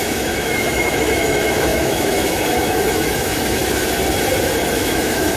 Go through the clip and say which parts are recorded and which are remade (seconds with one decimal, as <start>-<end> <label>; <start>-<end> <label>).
0.0-3.6 remade; 3.6-4.7 recorded; 4.7-5.4 remade